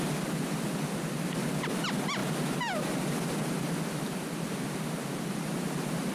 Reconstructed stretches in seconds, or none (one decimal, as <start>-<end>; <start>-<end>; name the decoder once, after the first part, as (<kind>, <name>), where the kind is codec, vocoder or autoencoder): none